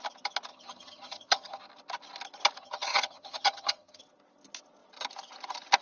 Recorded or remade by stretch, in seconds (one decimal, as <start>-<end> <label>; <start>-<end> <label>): 0.0-0.5 recorded; 0.5-1.6 remade; 1.6-2.6 recorded; 2.6-4.0 remade; 4.0-5.8 recorded